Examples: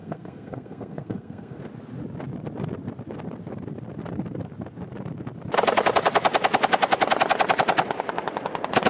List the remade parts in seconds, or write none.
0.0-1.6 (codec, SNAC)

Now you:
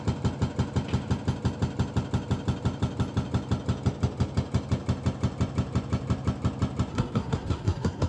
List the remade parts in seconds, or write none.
6.9-8.1 (codec, SNAC)

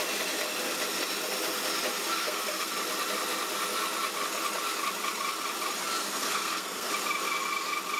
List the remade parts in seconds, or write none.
2.2-2.7 (codec, SNAC); 6.0-6.9